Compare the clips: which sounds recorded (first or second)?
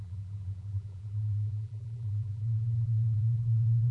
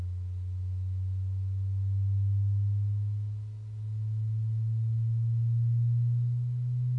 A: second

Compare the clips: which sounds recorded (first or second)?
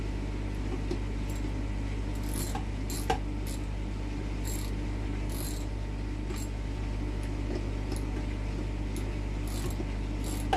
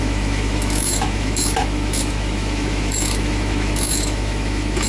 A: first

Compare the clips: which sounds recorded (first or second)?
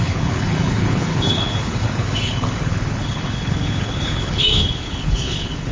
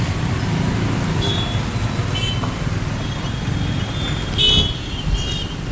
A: second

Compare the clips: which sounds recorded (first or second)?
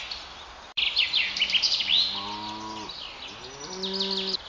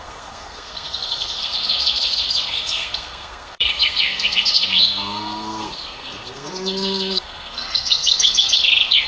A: first